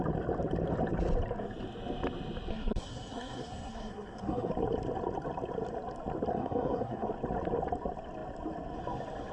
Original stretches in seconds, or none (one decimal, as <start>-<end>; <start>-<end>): 0.0-2.5; 4.5-6.3; 7.1-9.3